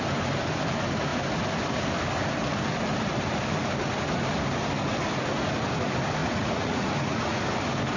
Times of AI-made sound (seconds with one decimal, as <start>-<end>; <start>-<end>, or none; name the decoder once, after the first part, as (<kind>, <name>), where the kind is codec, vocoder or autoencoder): 6.2-7.4 (vocoder, Vocos)